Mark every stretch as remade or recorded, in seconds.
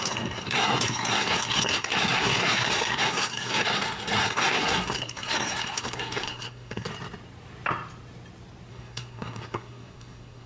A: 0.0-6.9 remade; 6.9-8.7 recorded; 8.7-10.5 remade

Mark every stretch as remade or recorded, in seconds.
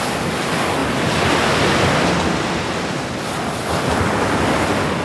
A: 0.0-5.0 recorded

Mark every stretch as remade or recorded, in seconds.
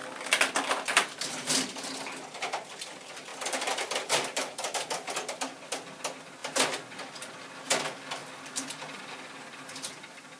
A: 0.0-0.9 remade; 0.9-3.3 recorded; 3.3-5.1 remade; 5.1-8.2 recorded; 8.2-9.0 remade; 9.0-10.4 recorded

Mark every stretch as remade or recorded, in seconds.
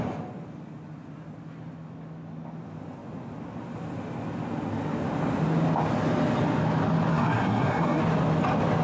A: 0.0-7.1 recorded; 7.1-8.0 remade; 8.0-8.8 recorded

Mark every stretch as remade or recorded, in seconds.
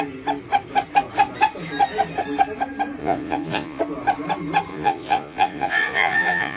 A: 0.0-3.0 recorded; 3.0-3.8 remade; 3.8-4.7 recorded; 4.7-6.6 remade